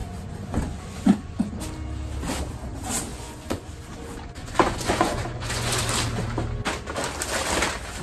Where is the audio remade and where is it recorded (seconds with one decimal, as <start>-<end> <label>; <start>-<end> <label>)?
0.0-1.5 remade; 1.5-3.1 recorded; 3.1-3.7 remade; 3.7-4.4 recorded; 4.4-5.8 remade; 5.8-8.0 recorded